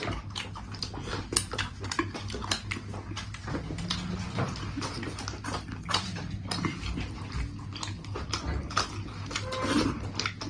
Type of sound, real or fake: real